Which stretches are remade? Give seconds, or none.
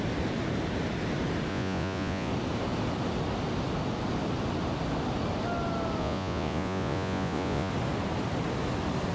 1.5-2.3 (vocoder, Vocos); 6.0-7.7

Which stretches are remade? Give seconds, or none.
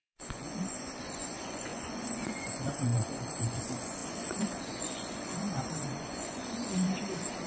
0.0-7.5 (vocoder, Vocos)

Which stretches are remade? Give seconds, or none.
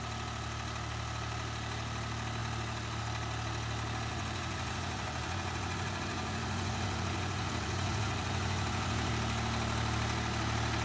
4.1-9.1 (vocoder, Vocos)